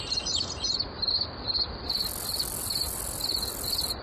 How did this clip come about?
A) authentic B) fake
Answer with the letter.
A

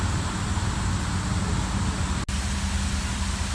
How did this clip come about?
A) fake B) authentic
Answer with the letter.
B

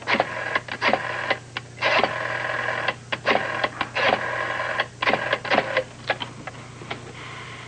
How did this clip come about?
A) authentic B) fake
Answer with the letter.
A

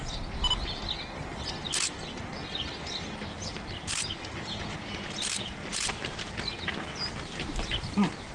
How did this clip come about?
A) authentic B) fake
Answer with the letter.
A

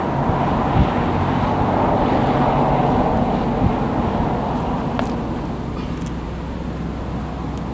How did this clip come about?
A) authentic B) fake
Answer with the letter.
A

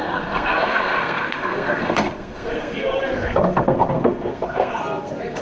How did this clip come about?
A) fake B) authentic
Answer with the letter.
A